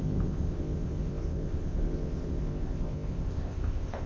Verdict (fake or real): fake